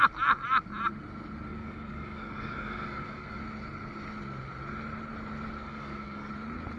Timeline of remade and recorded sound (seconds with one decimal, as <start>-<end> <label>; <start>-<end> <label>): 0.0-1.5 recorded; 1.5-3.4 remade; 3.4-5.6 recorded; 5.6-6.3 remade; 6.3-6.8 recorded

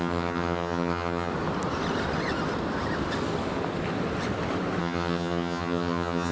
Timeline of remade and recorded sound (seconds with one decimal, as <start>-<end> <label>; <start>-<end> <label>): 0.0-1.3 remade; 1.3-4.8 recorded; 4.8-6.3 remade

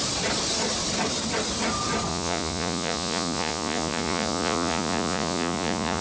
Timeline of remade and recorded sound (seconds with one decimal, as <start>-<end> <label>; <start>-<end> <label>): 0.0-2.1 recorded; 2.1-6.0 remade

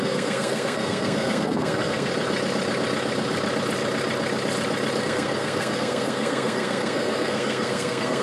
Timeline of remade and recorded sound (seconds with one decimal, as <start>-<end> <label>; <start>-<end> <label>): 0.0-2.1 remade; 2.1-5.0 recorded; 5.0-8.2 remade

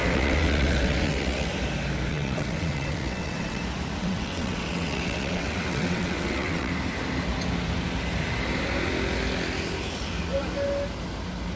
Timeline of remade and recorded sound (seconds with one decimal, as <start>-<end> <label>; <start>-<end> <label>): 0.0-1.5 remade; 1.5-2.1 recorded; 2.1-3.6 remade; 3.6-4.0 recorded; 4.0-6.7 remade; 6.7-11.6 recorded

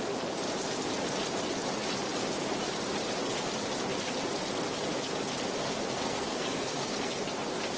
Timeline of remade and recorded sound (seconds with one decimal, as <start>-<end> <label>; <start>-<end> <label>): 0.0-5.6 recorded; 5.6-7.2 remade; 7.2-7.8 recorded